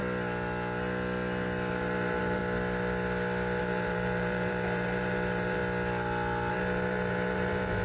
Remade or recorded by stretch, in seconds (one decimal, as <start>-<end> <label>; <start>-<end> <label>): 0.0-1.7 recorded; 1.7-2.4 remade; 2.4-3.6 recorded; 3.6-5.6 remade; 5.6-6.5 recorded; 6.5-7.8 remade